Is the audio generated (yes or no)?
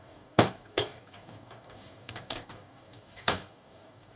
yes